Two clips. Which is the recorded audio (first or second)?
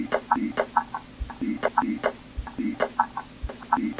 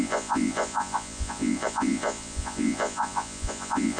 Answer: first